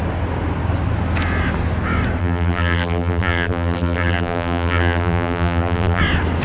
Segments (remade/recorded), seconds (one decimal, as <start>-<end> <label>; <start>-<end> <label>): 0.0-2.2 recorded; 2.2-6.0 remade; 6.0-6.4 recorded